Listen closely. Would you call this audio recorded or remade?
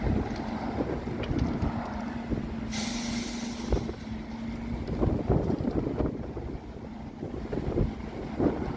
recorded